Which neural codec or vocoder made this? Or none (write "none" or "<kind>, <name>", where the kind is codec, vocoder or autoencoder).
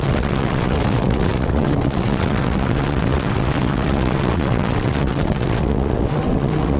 vocoder, WaveNeXt